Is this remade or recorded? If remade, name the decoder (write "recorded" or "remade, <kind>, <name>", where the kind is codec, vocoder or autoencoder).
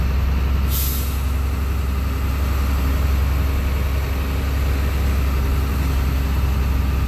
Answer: recorded